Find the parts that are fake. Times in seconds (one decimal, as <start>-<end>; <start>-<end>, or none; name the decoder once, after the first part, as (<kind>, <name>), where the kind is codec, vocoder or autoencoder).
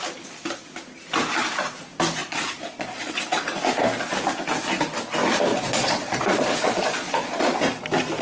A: 2.2-3.2 (vocoder, Vocos); 5.5-7.4